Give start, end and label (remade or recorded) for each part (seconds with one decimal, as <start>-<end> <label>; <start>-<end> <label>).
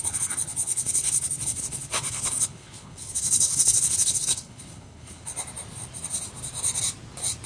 0.0-5.3 remade; 5.3-7.5 recorded